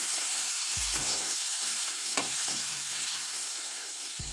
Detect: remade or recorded remade